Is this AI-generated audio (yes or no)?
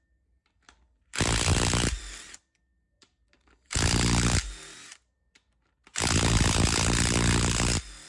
no